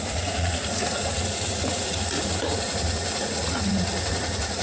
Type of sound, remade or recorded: remade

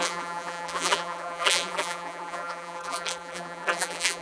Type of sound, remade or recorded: remade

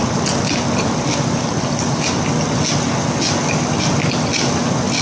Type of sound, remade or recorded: recorded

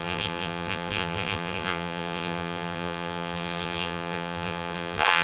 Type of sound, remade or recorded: remade